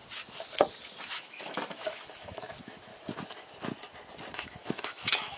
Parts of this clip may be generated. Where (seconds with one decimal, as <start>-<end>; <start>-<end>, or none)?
1.0-2.9; 4.3-5.4